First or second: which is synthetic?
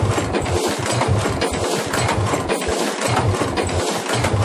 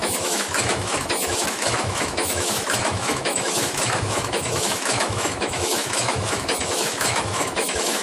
second